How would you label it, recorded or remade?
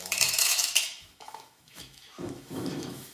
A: remade